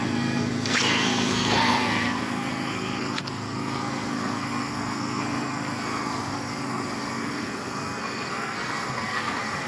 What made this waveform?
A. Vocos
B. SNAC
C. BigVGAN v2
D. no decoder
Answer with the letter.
B